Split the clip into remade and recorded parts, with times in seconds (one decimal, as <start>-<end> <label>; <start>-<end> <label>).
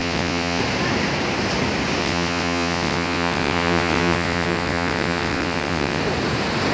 0.0-0.6 remade; 0.6-2.0 recorded; 2.0-6.0 remade; 6.0-6.7 recorded